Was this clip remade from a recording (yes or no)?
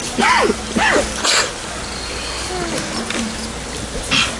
no